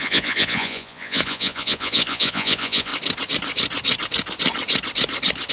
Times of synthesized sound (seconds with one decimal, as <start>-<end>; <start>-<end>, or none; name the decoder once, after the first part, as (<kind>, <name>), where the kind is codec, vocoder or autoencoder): 0.0-2.9 (vocoder, Vocos)